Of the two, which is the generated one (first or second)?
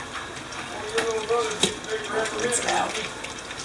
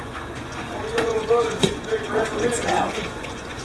second